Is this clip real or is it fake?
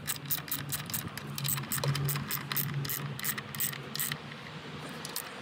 real